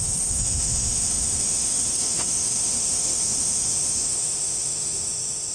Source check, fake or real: fake